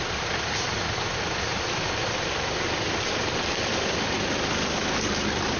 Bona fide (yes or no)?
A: yes